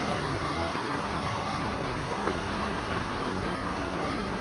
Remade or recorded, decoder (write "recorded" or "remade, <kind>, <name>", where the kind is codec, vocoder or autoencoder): remade, codec, SNAC